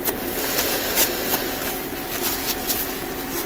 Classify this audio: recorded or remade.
recorded